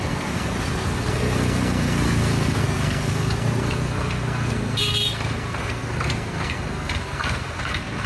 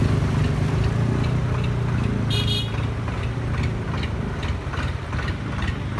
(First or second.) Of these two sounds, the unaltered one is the second